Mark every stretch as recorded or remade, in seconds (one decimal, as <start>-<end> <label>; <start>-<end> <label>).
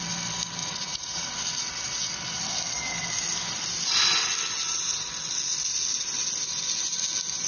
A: 0.0-0.6 recorded; 0.6-1.3 remade; 1.3-7.5 recorded